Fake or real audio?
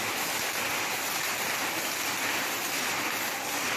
real